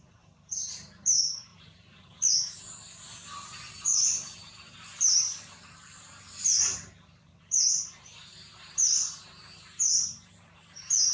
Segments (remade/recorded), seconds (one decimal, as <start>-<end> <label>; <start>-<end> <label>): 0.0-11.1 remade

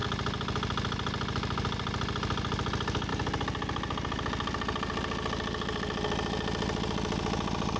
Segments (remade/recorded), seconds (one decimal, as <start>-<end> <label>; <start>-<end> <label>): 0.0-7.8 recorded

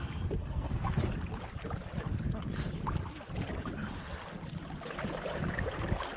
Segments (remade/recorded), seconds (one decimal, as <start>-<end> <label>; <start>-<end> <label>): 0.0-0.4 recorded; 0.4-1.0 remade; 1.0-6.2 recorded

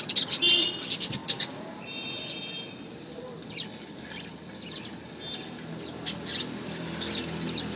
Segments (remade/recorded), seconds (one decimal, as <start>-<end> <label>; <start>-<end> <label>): 0.0-7.8 recorded

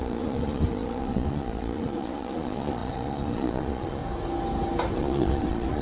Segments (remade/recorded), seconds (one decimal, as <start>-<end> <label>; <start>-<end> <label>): 0.0-4.0 remade; 4.0-4.9 recorded; 4.9-5.8 remade